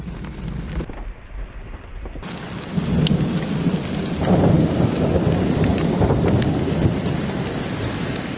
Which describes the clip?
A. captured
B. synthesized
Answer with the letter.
A